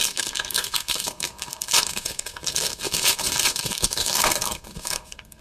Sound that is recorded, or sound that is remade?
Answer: remade